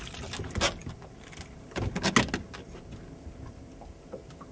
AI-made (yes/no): no